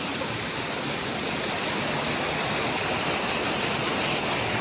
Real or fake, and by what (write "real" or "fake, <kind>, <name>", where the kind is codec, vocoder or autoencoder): real